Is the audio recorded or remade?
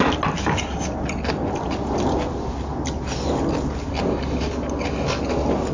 recorded